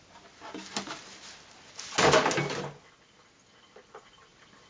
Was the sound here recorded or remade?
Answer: recorded